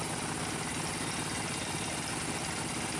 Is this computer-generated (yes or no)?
no